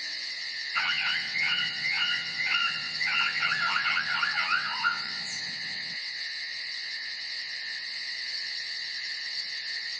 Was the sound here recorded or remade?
remade